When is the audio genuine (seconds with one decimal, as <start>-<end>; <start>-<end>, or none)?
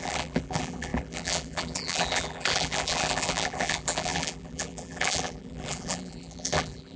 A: none